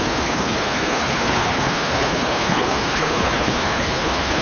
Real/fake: fake